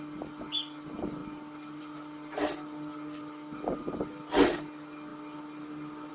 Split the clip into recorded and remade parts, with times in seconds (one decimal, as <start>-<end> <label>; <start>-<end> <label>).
0.0-6.1 recorded